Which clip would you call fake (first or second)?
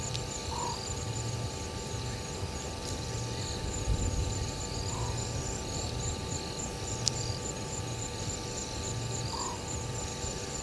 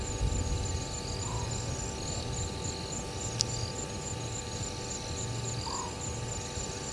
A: first